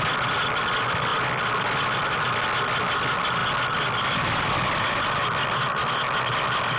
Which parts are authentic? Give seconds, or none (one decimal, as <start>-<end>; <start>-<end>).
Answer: 0.0-6.8